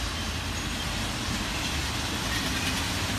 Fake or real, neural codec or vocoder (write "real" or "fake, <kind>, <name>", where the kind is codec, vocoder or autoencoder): real